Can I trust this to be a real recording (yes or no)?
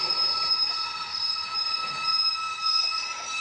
yes